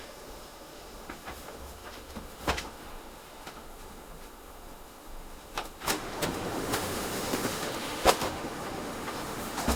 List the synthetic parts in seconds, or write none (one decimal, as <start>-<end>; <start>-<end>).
0.0-9.8